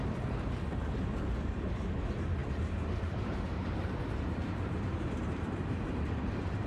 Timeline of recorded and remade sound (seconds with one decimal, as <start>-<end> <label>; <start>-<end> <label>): 0.0-2.4 recorded; 2.4-6.7 remade